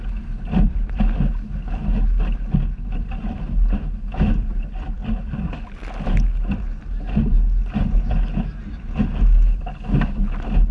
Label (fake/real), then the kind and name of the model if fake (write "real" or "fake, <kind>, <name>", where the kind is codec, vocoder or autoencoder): real